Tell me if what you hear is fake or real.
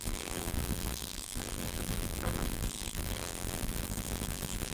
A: fake